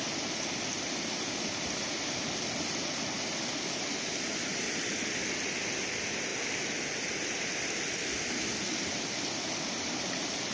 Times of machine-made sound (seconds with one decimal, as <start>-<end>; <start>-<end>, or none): none